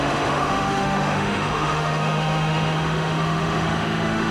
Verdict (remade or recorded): remade